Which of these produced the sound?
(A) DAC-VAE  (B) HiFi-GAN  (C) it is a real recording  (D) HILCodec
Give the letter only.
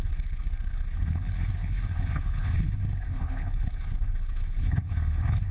D